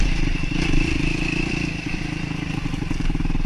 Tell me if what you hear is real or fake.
fake